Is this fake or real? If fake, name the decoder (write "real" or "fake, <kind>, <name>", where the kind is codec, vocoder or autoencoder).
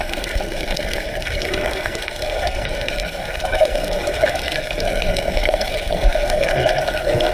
fake, codec, SNAC